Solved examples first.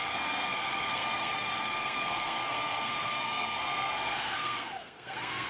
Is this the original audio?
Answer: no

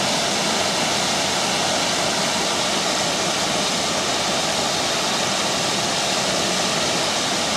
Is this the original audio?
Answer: yes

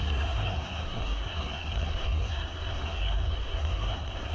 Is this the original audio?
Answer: no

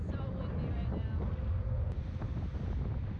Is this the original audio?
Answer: yes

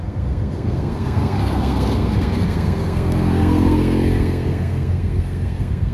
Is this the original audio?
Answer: no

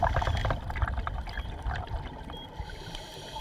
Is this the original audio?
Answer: yes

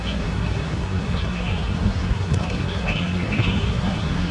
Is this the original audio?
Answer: no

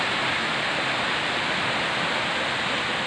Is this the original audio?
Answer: yes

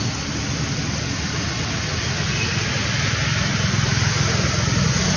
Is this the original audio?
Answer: yes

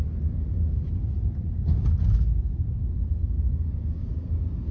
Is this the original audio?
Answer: yes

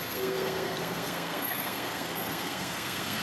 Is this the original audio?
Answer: no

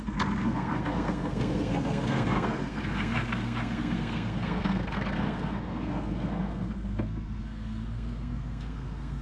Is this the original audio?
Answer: no